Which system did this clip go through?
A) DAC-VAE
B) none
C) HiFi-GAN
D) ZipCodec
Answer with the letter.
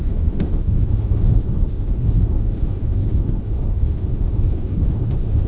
A